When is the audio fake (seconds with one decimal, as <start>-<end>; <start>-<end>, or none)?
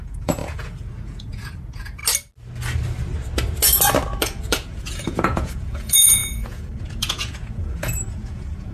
0.0-2.0; 4.2-8.7